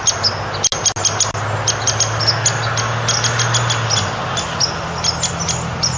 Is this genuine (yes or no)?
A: yes